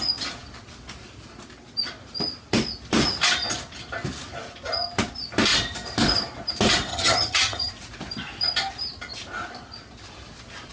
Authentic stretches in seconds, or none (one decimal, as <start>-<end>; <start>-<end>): 0.0-6.9; 7.7-10.7